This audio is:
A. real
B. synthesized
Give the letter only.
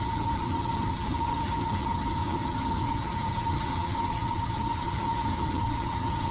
B